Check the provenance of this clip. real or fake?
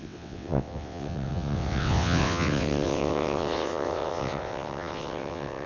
fake